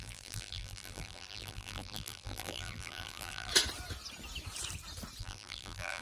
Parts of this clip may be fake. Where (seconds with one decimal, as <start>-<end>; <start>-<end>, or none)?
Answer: 0.0-3.5; 5.2-6.0